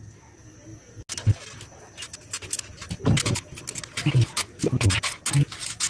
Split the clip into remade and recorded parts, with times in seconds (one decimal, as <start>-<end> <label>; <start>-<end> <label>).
0.0-5.9 recorded